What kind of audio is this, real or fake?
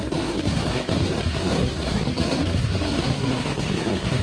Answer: fake